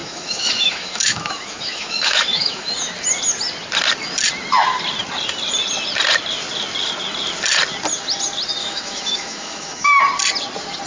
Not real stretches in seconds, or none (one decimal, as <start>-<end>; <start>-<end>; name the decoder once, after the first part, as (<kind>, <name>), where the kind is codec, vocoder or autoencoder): 0.0-2.7 (autoencoder, DAC-VAE); 8.6-10.0